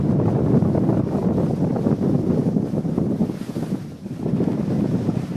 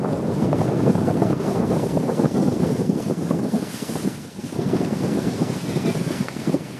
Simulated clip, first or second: second